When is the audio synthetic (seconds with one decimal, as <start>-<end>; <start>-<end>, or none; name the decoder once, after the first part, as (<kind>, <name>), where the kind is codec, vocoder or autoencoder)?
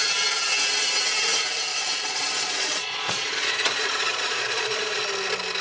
1.7-5.1 (vocoder, Vocos)